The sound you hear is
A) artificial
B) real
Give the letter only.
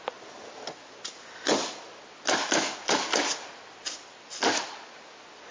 B